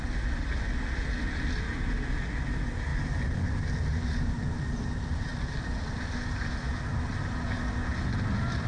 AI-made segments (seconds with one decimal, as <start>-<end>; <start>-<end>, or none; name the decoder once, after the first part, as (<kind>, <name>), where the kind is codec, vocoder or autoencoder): 2.9-3.6 (vocoder, BigVGAN v2); 5.3-6.3